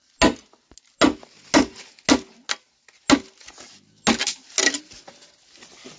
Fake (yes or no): no